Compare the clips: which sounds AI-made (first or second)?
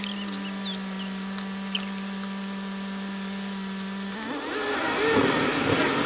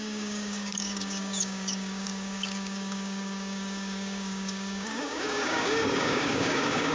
second